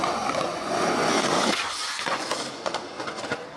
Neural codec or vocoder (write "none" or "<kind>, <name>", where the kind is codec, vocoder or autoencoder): vocoder, Vocos